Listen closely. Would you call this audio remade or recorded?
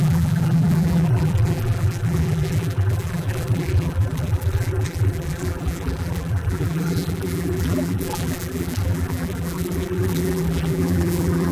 remade